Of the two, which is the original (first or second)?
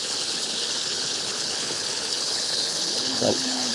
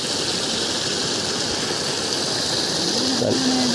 second